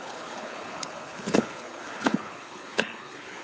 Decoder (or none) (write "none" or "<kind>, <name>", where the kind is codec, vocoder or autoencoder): codec, HILCodec